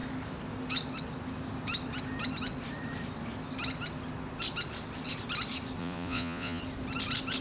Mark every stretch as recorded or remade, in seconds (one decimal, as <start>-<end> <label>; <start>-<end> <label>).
0.0-5.8 recorded; 5.8-6.6 remade; 6.6-7.4 recorded